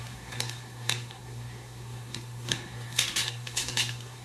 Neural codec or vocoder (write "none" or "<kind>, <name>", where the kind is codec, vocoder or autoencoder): codec, SNAC